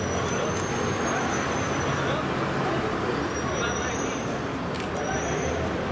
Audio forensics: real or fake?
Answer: real